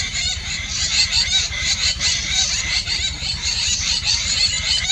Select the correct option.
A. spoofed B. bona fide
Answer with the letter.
A